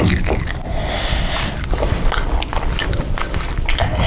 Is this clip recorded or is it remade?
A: recorded